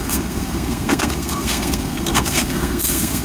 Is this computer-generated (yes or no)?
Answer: yes